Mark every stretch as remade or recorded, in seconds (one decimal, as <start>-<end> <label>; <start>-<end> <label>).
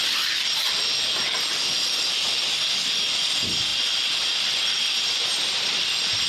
0.0-5.2 recorded; 5.2-6.3 remade